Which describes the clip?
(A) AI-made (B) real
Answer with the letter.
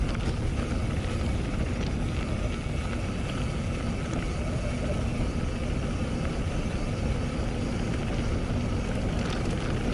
B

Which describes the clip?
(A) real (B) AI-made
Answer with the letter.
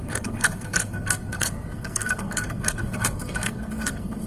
B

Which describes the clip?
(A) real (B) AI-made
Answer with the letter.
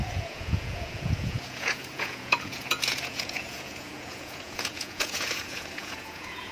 B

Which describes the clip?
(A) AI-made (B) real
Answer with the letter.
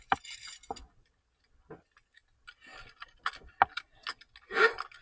B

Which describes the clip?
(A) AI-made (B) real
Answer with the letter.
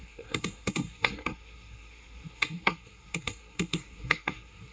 A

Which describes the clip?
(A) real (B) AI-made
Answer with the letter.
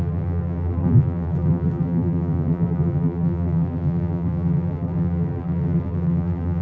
B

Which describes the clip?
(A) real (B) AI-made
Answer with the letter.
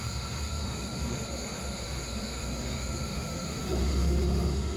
B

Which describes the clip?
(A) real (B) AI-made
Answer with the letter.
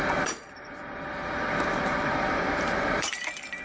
B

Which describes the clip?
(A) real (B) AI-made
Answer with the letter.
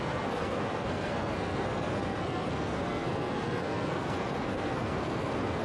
B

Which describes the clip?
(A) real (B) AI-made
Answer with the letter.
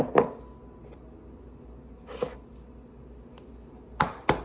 A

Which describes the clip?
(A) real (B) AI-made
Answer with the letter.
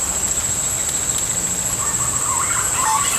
A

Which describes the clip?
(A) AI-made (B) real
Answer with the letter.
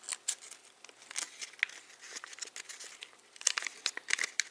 B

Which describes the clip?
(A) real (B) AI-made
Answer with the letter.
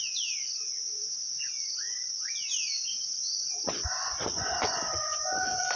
B